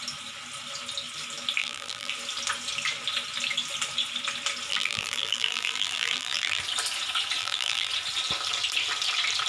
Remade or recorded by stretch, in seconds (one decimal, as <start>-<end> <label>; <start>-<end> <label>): 0.0-1.6 recorded; 1.6-2.1 remade; 2.1-4.7 recorded; 4.7-6.6 remade; 6.6-7.4 recorded; 7.4-7.9 remade; 7.9-9.5 recorded